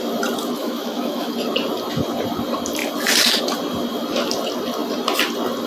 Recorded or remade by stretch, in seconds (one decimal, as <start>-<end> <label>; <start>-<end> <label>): 0.0-0.6 recorded; 0.6-1.3 remade; 1.3-5.7 recorded